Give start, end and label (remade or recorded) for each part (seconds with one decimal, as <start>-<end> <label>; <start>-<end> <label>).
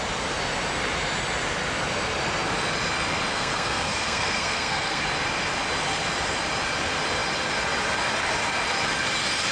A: 0.0-3.3 recorded; 3.3-5.0 remade; 5.0-9.5 recorded